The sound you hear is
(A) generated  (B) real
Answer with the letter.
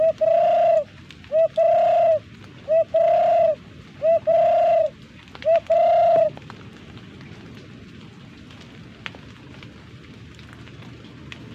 B